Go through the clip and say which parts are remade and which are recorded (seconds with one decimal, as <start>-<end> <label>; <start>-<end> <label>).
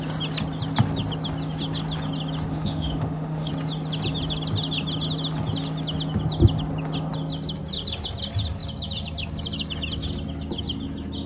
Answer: 0.0-2.5 recorded; 2.5-3.5 remade; 3.5-11.3 recorded